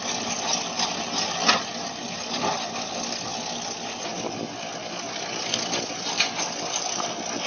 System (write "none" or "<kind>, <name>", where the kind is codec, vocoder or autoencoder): none